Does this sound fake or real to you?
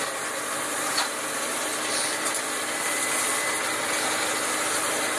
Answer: real